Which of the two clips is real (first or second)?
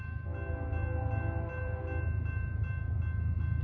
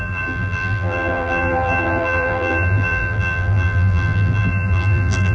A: first